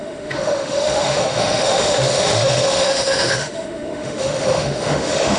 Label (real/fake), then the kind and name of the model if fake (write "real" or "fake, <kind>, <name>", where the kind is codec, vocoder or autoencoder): fake, autoencoder, DAC-VAE